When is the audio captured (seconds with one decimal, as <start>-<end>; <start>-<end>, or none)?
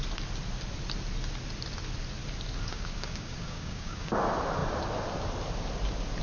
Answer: 0.0-2.7; 4.1-6.2